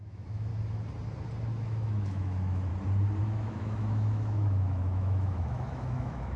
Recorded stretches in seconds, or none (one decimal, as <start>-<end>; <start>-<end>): 0.5-1.6; 2.7-3.2